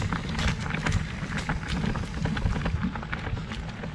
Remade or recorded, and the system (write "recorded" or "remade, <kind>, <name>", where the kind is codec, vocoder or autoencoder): recorded